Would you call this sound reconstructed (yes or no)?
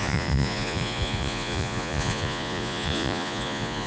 yes